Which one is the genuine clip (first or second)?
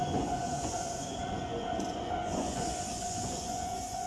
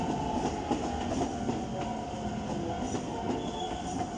second